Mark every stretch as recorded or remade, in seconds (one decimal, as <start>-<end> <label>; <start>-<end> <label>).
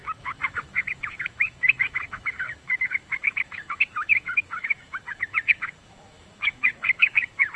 0.0-7.6 remade